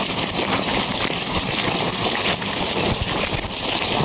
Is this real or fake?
real